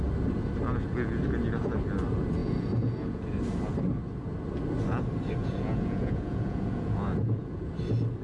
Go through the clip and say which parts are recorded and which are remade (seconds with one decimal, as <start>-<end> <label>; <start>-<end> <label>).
0.0-2.4 recorded; 2.4-3.3 remade; 3.3-5.4 recorded; 5.4-7.7 remade; 7.7-8.2 recorded